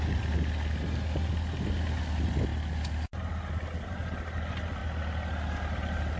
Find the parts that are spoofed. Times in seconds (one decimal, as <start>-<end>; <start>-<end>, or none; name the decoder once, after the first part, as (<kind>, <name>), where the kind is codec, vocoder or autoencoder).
none